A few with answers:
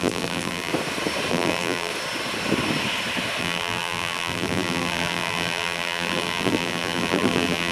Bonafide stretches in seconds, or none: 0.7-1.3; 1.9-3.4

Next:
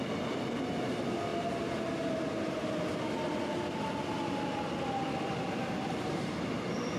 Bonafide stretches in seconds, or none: 0.0-7.0

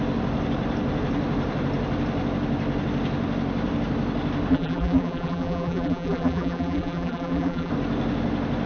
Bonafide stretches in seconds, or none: 0.0-4.5; 7.7-8.7